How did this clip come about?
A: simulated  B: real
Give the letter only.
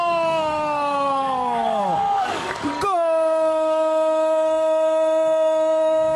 A